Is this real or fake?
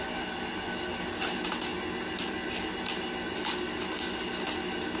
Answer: real